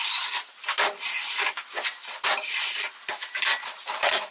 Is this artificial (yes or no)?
no